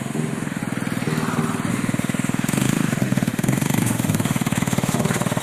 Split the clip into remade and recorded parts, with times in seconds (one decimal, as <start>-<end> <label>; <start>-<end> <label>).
0.0-0.6 remade; 0.6-1.7 recorded; 1.7-5.4 remade